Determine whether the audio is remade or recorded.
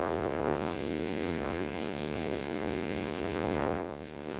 remade